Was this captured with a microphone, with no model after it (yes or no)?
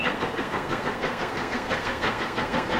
no